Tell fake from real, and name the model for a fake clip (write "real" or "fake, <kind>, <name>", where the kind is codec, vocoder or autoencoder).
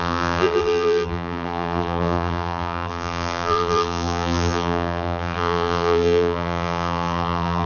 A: fake, vocoder, BigVGAN v2